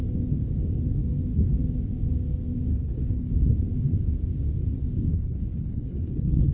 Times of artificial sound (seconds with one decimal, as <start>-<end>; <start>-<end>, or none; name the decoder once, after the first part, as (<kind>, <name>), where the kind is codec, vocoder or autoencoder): 2.7-3.3 (codec, HILCodec); 5.1-6.5